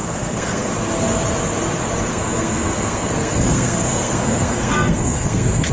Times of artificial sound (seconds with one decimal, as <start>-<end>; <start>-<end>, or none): 0.0-0.7; 2.1-5.7